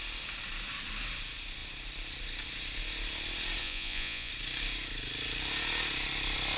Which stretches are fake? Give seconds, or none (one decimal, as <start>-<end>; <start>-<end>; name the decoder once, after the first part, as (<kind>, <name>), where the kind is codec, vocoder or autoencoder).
3.6-4.3 (vocoder, Vocos)